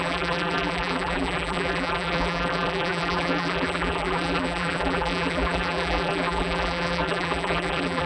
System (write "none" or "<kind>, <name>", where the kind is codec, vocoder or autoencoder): vocoder, BigVGAN v2